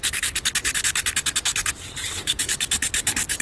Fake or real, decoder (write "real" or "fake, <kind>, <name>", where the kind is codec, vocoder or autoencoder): real